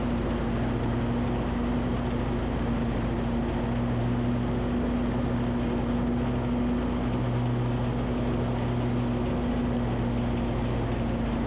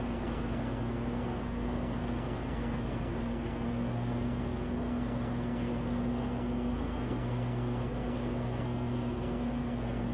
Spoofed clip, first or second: second